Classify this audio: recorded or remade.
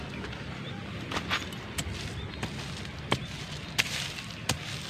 recorded